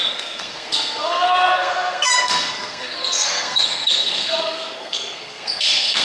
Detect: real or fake fake